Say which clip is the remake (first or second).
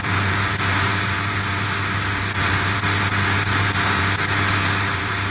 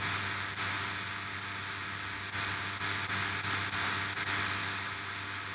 first